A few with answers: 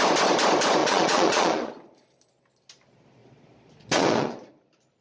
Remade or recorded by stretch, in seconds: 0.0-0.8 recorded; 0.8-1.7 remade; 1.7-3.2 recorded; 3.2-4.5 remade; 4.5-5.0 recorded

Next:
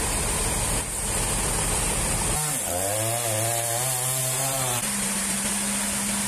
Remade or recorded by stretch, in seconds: 0.0-4.2 recorded; 4.2-5.5 remade; 5.5-6.3 recorded

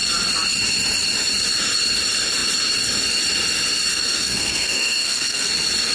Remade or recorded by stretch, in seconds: 0.0-3.9 recorded; 3.9-5.5 remade; 5.5-5.9 recorded